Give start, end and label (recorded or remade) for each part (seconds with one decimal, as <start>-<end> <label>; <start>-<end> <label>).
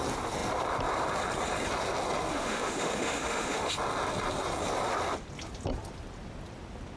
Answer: 0.0-2.3 recorded; 2.3-3.7 remade; 3.7-7.0 recorded